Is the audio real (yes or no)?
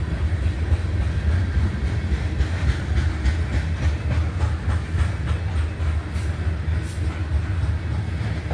yes